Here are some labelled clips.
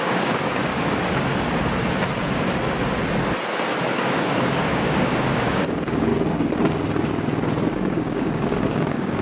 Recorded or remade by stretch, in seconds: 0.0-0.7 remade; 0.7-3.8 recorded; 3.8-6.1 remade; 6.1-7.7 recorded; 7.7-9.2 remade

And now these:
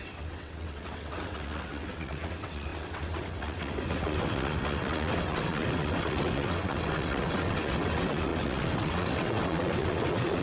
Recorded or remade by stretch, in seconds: 0.0-10.4 remade

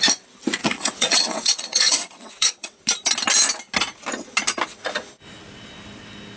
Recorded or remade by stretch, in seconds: 0.0-0.6 recorded; 0.6-2.8 remade; 2.8-6.4 recorded

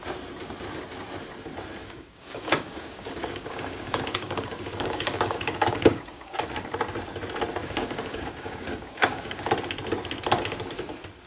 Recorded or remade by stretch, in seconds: 0.0-1.8 recorded; 1.8-6.5 remade; 6.5-7.6 recorded; 7.6-9.5 remade; 9.5-11.3 recorded

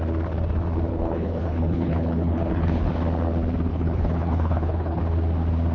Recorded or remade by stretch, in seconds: 0.0-0.9 recorded; 0.9-2.9 remade; 2.9-3.7 recorded; 3.7-5.0 remade; 5.0-5.7 recorded

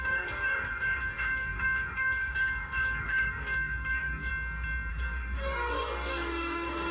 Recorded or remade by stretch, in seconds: 0.0-4.3 remade; 4.3-4.9 recorded; 4.9-6.9 remade